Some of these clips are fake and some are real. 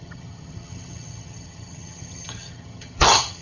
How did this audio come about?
fake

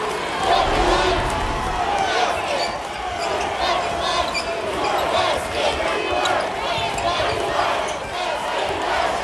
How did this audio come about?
real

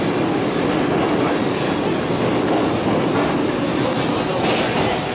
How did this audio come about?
real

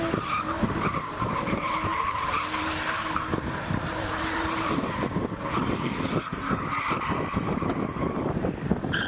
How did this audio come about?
fake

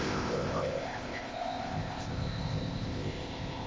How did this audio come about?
fake